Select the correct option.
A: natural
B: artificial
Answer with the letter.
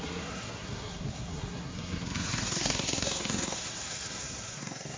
B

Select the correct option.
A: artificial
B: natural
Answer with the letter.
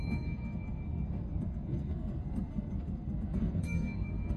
A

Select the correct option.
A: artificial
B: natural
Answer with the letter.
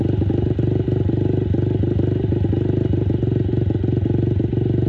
B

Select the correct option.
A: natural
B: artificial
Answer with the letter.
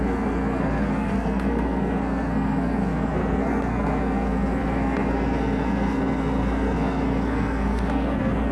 B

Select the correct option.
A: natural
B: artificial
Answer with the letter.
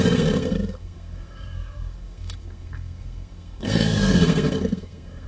B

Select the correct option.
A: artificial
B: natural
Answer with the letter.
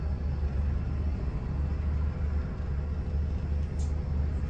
B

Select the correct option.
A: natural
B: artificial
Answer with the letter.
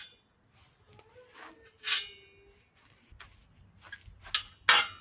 A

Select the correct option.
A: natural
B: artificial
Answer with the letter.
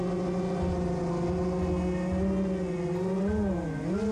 A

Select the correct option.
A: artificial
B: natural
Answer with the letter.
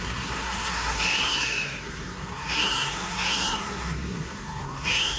A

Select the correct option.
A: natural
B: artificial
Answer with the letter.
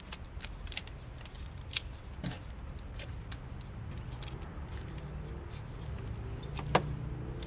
A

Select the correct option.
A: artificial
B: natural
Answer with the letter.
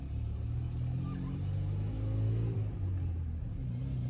B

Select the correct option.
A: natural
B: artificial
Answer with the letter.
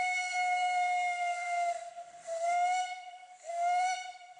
B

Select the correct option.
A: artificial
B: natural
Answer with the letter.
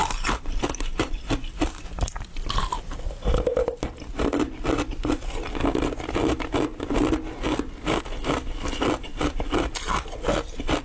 B